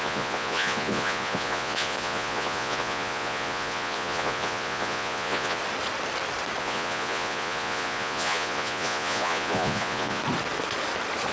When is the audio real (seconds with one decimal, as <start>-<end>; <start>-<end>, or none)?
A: 5.6-6.6; 10.2-11.3